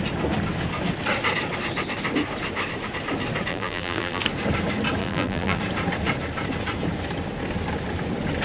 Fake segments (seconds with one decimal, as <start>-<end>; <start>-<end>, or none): 3.5-4.2; 5.0-5.6